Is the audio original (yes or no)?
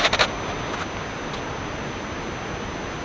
yes